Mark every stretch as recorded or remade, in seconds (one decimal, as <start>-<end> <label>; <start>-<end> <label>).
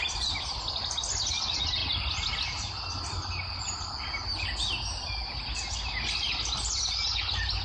0.0-7.6 recorded